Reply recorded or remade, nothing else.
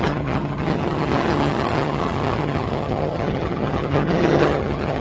remade